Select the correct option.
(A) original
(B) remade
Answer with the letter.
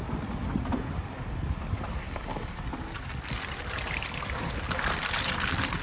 A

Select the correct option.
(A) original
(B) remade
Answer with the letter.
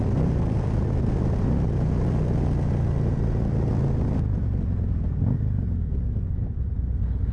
A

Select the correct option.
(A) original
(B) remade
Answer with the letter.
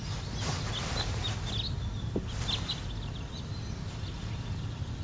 A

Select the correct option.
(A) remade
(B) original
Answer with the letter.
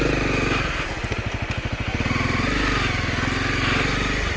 B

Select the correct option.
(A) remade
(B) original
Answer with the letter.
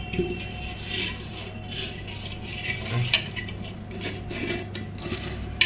B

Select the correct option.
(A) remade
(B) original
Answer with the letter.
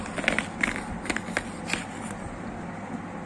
B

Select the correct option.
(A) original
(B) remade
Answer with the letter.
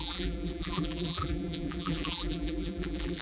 B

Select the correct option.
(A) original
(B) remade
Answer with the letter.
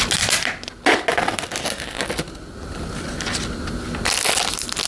A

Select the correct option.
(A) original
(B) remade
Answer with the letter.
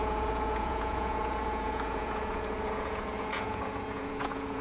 B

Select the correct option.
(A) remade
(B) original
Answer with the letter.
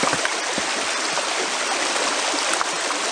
B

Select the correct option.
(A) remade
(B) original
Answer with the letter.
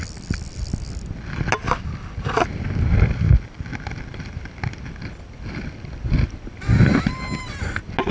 B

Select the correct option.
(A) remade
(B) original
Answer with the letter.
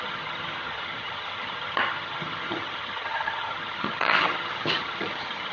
A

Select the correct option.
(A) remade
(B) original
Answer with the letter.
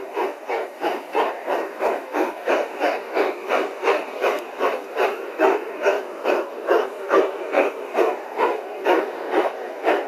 A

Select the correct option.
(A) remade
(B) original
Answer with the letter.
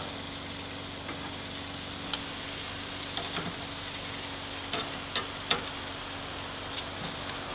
B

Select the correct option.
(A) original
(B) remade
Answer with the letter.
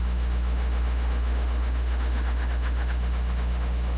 B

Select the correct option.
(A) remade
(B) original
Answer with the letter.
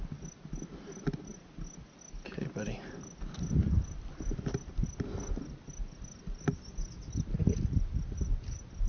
B